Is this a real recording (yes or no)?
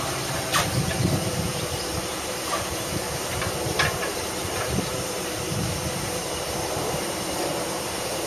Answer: no